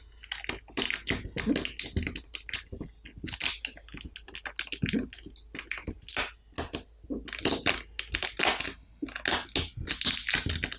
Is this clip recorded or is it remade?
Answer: recorded